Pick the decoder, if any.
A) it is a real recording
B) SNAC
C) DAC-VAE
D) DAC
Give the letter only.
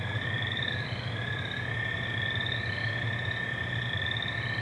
A